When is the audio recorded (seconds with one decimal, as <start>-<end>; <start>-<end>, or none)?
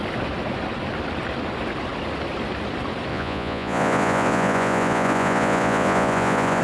0.0-3.1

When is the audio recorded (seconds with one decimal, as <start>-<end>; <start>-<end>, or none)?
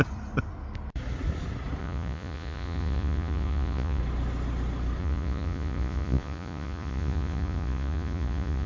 0.0-1.8; 4.0-5.0